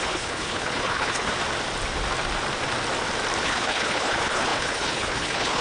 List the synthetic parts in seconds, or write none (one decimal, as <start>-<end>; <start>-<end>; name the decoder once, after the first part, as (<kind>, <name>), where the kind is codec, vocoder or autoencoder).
0.0-1.3 (codec, HILCodec); 3.4-5.6